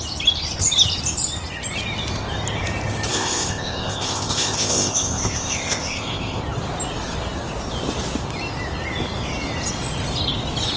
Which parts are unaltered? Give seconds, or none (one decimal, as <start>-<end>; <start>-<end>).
0.0-3.1; 6.4-10.8